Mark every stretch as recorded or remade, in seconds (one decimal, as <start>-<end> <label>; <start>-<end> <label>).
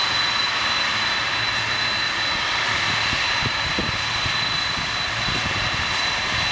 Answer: 0.0-6.5 recorded